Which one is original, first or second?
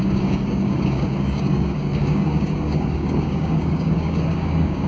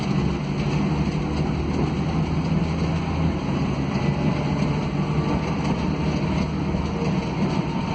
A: second